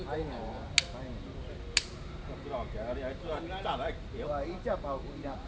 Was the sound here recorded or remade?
recorded